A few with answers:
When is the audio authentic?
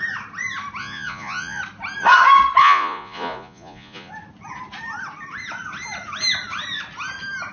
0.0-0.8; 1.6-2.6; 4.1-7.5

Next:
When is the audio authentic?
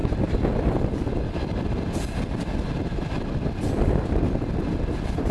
0.0-5.3